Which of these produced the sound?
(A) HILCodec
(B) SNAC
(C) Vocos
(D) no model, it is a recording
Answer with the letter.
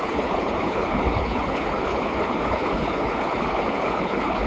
A